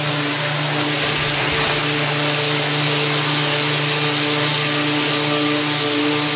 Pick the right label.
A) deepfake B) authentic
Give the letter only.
B